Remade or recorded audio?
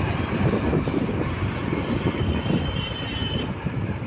remade